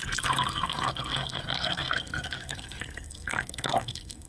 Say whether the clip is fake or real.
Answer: fake